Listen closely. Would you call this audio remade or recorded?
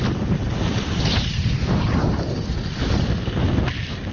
recorded